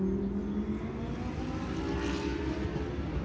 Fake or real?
real